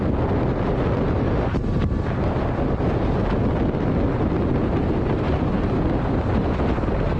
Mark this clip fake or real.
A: real